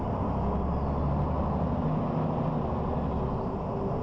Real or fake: real